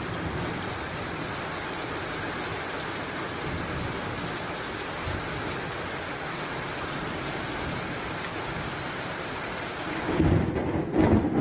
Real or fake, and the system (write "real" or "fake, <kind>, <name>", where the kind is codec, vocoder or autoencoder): real